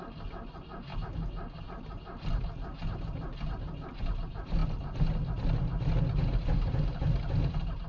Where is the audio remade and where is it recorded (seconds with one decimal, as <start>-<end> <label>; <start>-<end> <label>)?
0.0-7.9 recorded